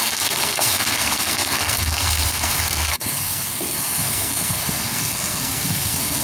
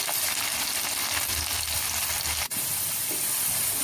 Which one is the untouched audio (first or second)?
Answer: second